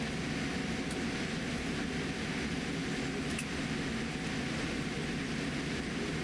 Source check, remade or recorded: recorded